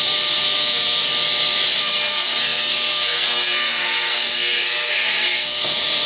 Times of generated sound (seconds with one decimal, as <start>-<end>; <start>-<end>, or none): 0.0-1.1; 1.8-6.1